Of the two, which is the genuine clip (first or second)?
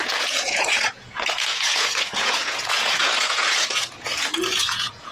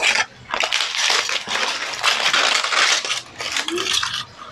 second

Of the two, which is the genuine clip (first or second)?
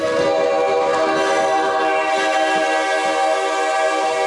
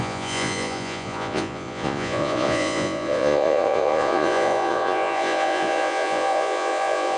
first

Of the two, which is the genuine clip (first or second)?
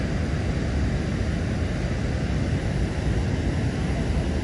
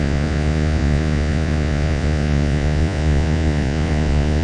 first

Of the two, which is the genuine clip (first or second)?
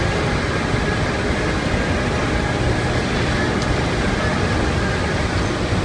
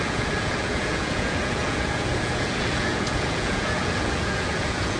first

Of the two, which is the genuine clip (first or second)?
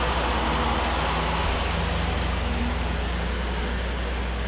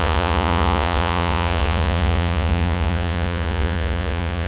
first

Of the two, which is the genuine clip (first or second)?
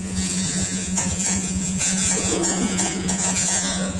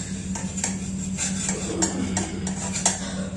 second